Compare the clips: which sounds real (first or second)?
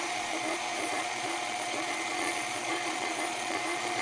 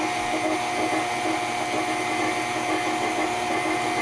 second